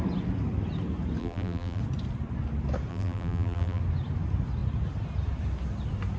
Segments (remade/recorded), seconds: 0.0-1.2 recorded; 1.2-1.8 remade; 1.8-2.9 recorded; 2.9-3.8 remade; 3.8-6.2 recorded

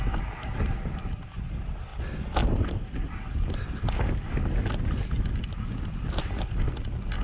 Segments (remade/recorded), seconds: 0.0-7.2 recorded

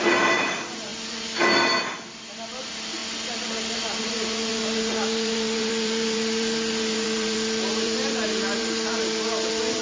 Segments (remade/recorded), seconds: 0.0-0.9 remade; 0.9-2.6 recorded; 2.6-3.0 remade; 3.0-4.0 recorded; 4.0-9.8 remade

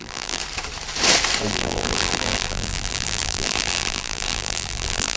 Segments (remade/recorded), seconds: 0.0-0.4 remade; 0.4-1.5 recorded; 1.5-5.2 remade